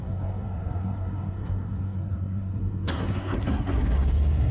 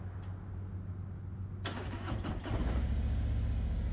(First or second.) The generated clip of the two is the first